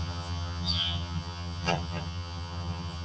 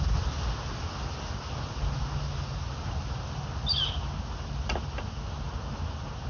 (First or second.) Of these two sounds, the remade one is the first